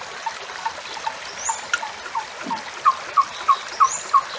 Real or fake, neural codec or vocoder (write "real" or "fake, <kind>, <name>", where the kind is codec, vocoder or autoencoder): real